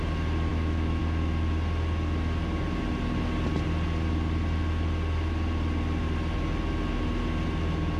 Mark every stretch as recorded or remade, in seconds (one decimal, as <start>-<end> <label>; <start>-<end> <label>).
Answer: 0.0-0.5 recorded; 0.5-1.0 remade; 1.0-8.0 recorded